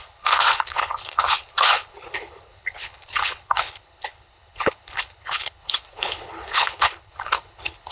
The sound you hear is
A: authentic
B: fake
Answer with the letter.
B